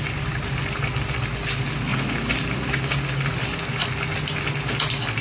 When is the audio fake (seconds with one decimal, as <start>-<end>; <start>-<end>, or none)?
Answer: none